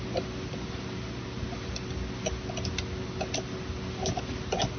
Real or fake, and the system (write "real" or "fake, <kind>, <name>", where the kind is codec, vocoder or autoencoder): real